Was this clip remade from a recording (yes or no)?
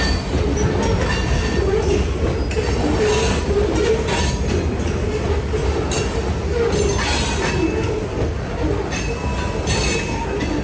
no